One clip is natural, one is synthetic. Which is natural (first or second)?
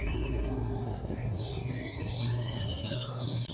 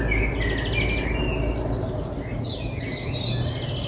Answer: second